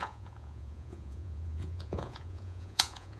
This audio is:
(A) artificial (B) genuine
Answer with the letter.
A